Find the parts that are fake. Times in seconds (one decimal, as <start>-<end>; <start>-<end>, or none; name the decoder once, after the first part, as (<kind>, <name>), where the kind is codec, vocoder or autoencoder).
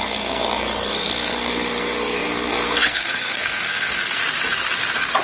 0.0-4.2 (codec, SNAC)